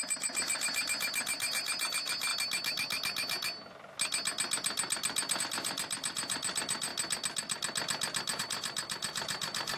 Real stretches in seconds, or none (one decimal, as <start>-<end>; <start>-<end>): 2.3-5.4; 6.9-8.4